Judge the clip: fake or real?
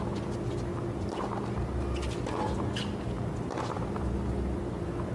real